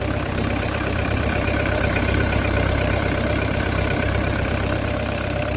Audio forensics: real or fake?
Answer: fake